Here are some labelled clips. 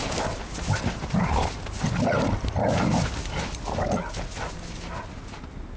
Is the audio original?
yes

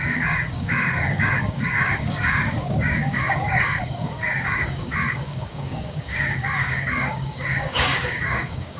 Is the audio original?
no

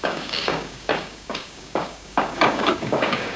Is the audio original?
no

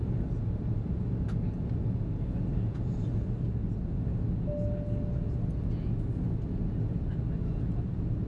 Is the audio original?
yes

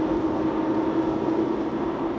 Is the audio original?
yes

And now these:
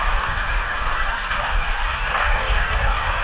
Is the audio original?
no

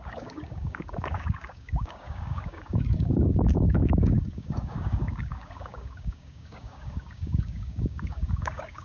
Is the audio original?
no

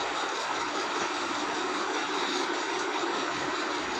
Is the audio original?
no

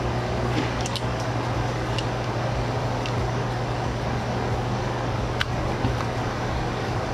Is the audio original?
no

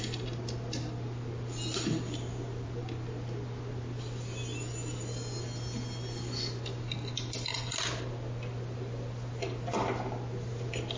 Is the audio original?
yes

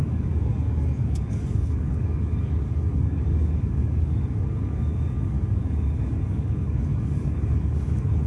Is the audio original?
no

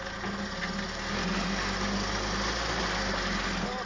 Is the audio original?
yes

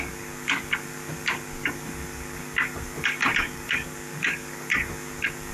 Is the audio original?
no